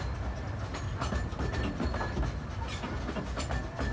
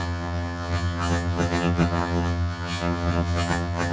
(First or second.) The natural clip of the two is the first